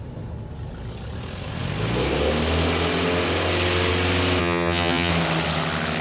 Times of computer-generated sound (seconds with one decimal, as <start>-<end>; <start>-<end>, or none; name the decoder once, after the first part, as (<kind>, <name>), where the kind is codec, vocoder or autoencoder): 4.4-5.1 (vocoder, HiFi-GAN)

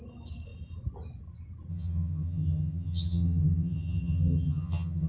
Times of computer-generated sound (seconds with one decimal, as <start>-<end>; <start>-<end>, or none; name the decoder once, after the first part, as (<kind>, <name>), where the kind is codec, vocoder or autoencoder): 1.7-5.1 (vocoder, HiFi-GAN)